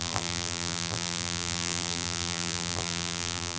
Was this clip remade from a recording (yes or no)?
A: yes